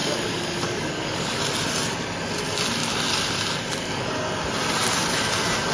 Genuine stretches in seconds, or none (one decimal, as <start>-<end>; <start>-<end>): 1.4-5.7